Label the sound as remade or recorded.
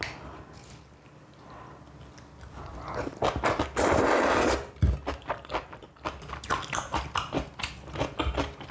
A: recorded